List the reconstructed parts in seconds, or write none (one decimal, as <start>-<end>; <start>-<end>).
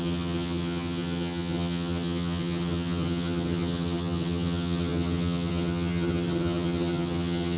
0.0-7.6